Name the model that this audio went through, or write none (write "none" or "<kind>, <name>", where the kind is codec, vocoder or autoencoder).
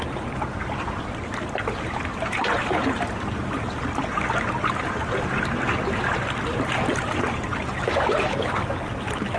none